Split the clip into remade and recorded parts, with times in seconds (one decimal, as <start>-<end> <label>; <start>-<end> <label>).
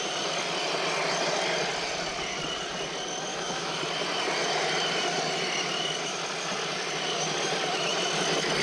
0.0-3.3 recorded; 3.3-3.8 remade; 3.8-8.6 recorded